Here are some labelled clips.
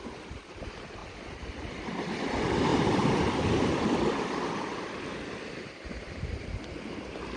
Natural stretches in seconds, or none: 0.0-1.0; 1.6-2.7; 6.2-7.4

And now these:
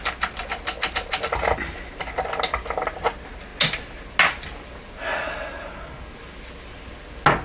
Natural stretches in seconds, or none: 0.0-7.4

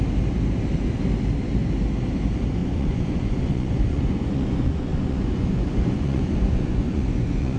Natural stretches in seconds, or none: 0.0-2.6

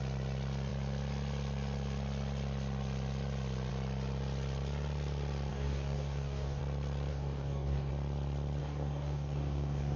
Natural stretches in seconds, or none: 0.0-5.5; 6.6-7.1; 7.9-8.6

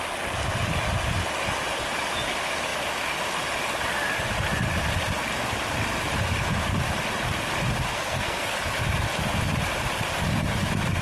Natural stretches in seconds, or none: 0.0-7.9; 8.6-11.0

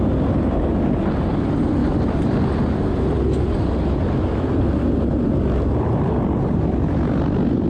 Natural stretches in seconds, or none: 0.0-7.7

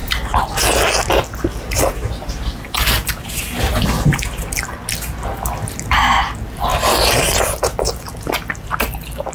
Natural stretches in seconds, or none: 0.0-9.3

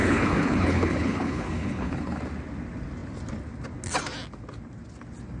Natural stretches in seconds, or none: 2.2-5.4